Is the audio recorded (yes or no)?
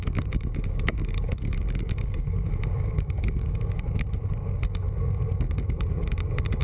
no